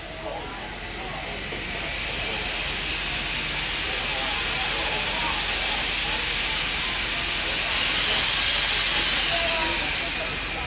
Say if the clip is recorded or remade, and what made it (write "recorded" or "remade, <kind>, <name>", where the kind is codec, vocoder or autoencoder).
recorded